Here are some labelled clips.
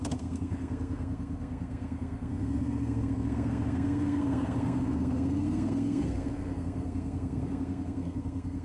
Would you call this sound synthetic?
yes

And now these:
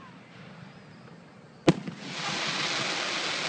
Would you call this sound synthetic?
no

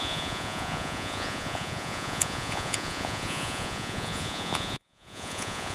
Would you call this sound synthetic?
yes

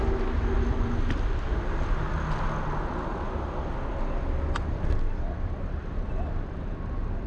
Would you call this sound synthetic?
no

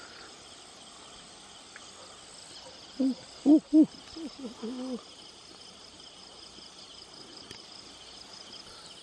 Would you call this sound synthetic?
no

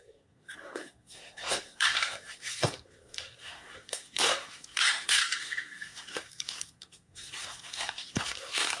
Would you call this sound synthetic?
yes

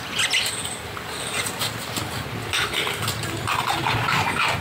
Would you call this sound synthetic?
no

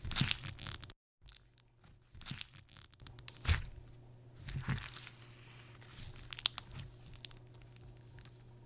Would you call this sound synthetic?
no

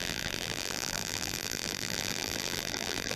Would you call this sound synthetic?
yes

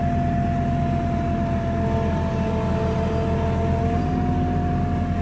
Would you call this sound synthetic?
no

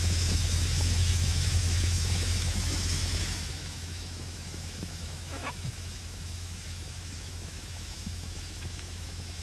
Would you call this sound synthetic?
yes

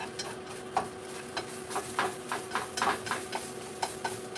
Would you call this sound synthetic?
no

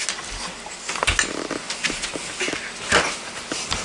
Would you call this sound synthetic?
no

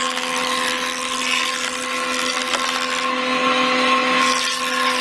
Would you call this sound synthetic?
no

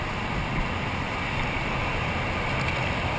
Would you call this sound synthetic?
no